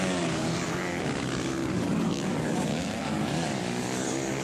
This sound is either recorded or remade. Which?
remade